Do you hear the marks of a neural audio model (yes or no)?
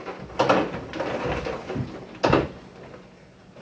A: no